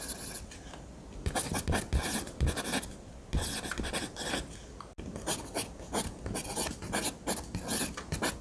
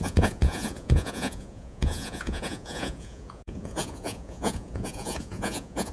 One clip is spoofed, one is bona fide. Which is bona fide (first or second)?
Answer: first